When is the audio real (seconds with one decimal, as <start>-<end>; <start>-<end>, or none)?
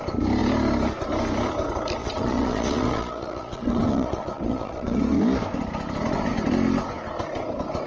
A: 0.0-2.0; 5.0-7.9